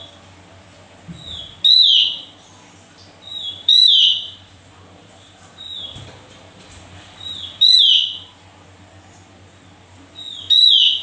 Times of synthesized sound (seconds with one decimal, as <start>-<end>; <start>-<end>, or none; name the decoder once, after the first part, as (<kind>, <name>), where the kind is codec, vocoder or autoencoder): 3.3-7.7 (vocoder, BigVGAN v2)